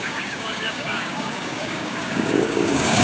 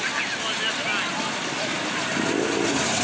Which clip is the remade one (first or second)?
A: first